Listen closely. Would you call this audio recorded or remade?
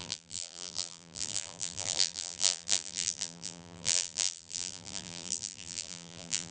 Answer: remade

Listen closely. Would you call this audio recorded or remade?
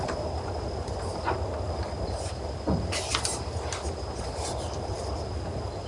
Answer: recorded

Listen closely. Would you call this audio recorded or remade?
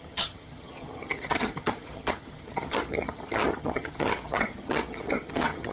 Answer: remade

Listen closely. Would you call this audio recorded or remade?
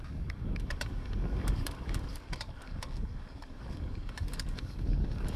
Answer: remade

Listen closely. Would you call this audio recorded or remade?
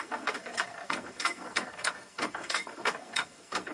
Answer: remade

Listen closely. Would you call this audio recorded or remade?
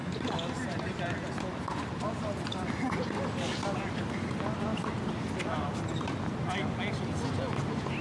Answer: recorded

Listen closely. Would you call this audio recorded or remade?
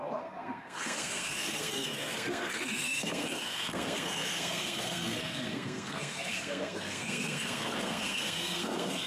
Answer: remade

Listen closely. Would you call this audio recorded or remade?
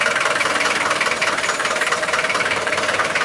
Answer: remade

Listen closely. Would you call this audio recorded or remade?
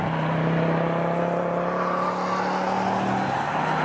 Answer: recorded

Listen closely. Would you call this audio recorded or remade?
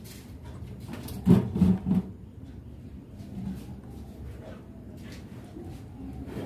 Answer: recorded